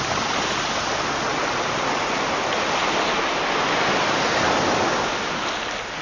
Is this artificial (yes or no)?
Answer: no